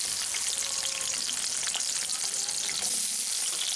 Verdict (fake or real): real